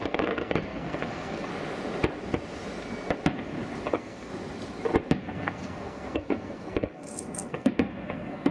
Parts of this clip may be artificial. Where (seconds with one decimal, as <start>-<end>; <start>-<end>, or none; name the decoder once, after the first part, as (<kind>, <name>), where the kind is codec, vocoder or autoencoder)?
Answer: 0.0-1.5 (codec, SNAC); 3.9-4.3; 5.2-8.5